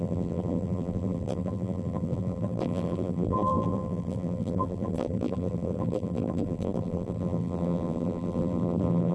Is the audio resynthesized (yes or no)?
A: yes